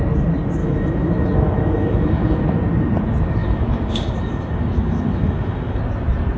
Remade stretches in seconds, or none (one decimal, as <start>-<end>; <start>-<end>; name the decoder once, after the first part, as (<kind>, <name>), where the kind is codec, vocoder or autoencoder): 0.6-2.4 (autoencoder, DAC-VAE); 3.4-5.8